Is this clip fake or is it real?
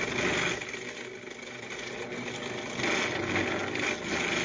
real